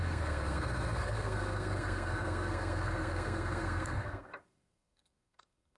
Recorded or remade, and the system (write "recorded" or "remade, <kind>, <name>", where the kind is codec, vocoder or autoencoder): remade, codec, SNAC